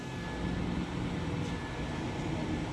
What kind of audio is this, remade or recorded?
recorded